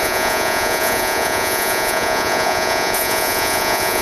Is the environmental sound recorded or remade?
remade